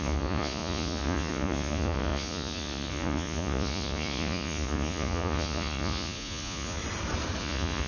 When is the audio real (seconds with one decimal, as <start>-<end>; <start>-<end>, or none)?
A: 6.8-7.4